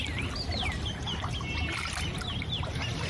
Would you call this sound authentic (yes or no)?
yes